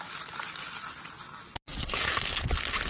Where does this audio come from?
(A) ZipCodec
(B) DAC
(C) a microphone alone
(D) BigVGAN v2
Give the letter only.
C